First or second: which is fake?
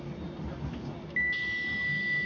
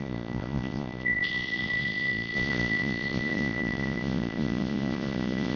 second